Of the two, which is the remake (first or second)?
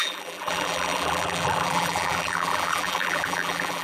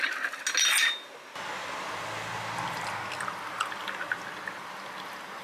first